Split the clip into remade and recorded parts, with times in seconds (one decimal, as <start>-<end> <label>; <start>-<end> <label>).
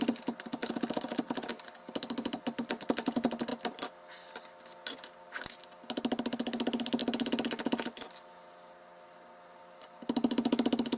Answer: 0.0-11.0 recorded